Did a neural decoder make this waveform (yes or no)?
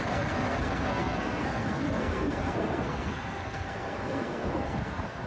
yes